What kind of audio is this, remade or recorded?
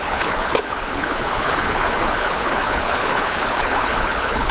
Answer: remade